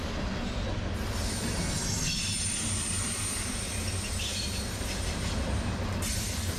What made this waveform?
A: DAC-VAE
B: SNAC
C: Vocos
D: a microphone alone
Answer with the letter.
D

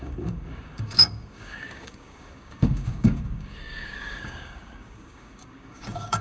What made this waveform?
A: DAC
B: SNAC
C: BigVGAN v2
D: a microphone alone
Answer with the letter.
A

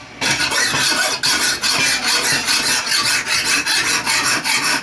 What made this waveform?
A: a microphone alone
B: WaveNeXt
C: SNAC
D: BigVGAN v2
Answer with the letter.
A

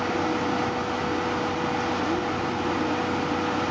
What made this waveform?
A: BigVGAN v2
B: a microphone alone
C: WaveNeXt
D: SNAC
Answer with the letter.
B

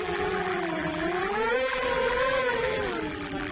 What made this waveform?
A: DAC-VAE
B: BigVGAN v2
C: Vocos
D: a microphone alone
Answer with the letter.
B